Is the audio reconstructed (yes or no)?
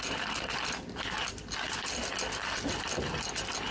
no